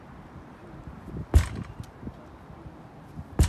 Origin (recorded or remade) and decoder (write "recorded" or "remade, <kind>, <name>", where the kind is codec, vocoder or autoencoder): recorded